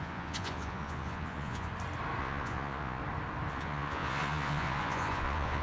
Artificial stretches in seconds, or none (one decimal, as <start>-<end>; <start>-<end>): 0.0-1.7; 2.2-3.0; 3.5-5.6

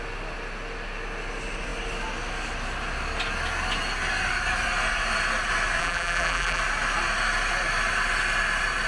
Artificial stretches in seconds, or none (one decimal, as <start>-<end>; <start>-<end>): 5.8-6.6

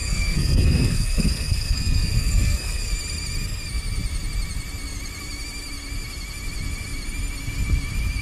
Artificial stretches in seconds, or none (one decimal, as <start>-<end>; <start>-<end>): 0.0-2.9

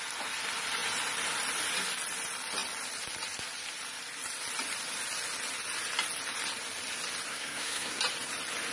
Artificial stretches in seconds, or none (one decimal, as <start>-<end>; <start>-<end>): 7.3-8.0